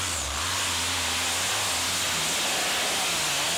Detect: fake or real real